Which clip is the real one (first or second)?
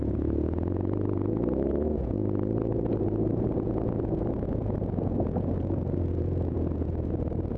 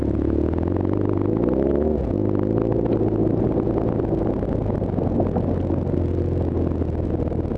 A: second